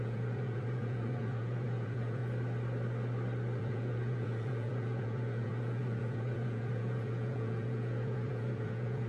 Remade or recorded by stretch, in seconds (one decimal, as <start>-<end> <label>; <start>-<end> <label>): 0.0-2.2 remade; 2.2-3.6 recorded; 3.6-9.1 remade